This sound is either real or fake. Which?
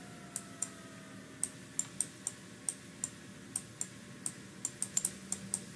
real